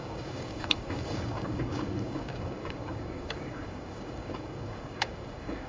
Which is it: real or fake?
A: fake